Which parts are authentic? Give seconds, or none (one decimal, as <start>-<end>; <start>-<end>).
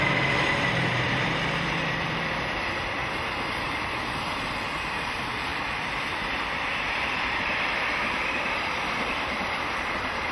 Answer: 3.0-3.6